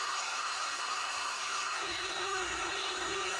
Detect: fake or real fake